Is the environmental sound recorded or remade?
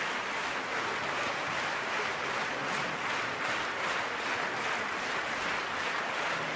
recorded